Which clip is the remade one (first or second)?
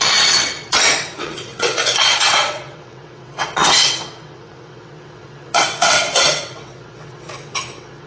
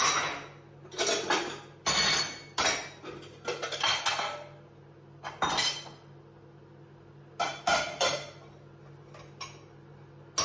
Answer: first